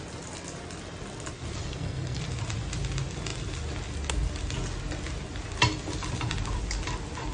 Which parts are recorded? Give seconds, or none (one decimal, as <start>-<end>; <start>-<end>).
0.0-1.6; 2.2-7.3